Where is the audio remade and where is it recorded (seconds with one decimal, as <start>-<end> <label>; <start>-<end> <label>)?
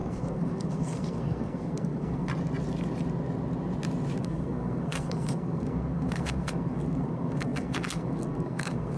0.0-2.3 remade; 2.3-4.2 recorded; 4.2-9.0 remade